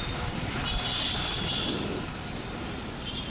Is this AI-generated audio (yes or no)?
yes